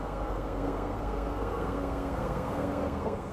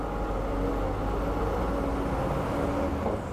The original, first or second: second